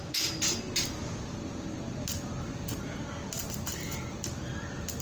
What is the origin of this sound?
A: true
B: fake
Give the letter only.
A